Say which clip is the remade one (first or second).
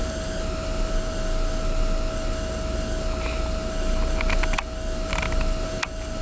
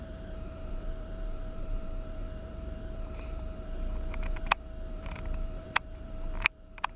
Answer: second